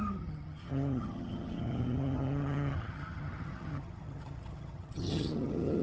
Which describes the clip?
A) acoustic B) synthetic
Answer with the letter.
B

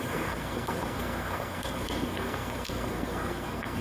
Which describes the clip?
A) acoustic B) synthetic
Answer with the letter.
B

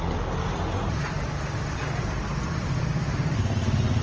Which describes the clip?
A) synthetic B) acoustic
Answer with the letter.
B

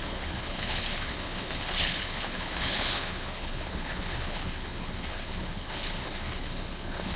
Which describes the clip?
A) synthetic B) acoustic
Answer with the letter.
A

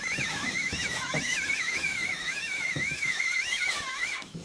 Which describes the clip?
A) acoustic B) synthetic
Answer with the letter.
B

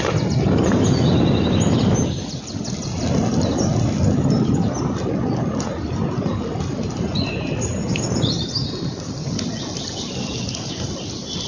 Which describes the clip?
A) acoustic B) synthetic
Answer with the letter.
A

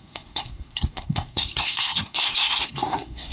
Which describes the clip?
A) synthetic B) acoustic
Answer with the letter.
A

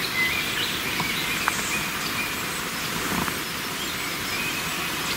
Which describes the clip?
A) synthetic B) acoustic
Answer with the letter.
B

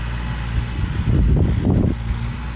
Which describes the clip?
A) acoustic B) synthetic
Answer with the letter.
A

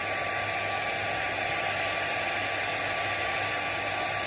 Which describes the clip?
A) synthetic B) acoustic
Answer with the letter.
B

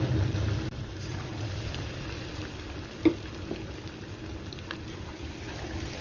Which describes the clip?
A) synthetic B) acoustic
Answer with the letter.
B